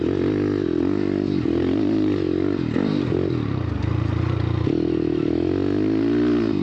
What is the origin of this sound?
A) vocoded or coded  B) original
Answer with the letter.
B